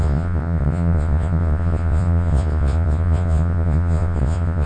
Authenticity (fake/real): fake